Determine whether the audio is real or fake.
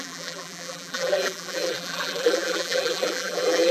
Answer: fake